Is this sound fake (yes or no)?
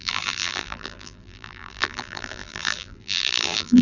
yes